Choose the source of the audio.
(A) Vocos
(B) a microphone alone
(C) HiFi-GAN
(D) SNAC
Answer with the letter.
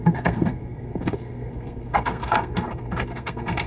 D